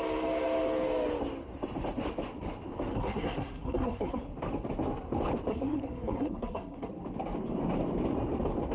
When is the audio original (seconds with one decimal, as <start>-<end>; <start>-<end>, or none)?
0.0-2.9; 4.2-5.5; 6.9-8.7